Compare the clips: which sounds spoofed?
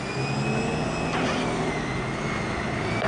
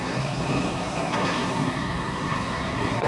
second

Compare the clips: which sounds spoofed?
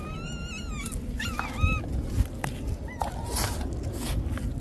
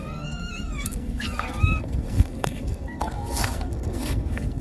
second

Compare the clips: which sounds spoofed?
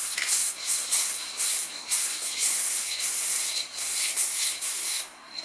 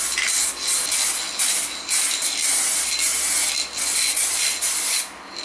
first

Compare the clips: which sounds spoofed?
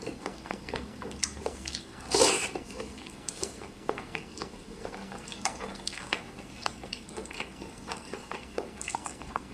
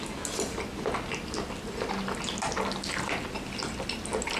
first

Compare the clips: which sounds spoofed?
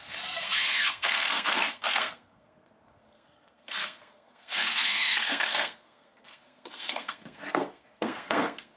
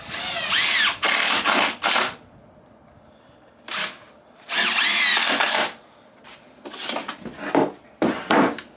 first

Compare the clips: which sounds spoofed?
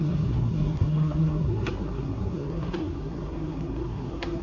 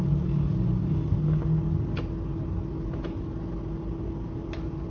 first